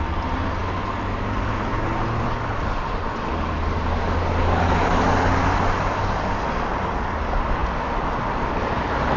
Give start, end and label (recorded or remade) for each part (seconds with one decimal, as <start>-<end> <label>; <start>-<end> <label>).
0.0-9.2 recorded